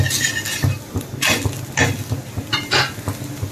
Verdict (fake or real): real